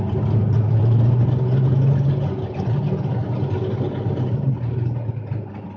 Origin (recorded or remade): recorded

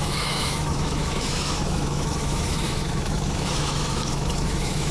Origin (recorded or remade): remade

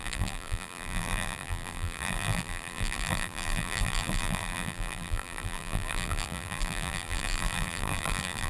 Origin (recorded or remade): remade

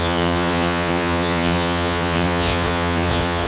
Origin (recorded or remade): remade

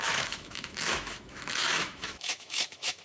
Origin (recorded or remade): remade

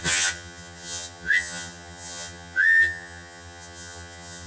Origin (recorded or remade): remade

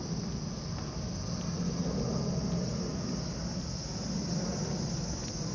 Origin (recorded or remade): recorded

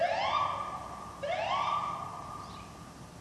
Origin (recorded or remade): recorded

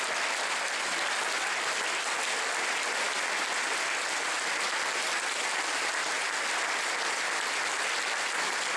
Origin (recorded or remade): recorded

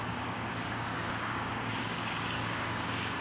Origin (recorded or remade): remade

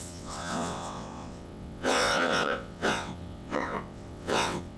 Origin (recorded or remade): remade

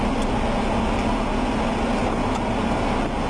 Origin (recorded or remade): recorded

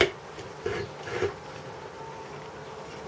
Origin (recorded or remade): recorded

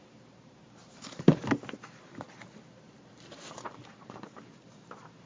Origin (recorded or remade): remade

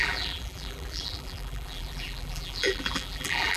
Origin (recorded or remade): remade